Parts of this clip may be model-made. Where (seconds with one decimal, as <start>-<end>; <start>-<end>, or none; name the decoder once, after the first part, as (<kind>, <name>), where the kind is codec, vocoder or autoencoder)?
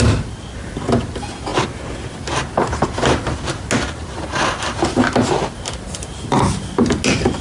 none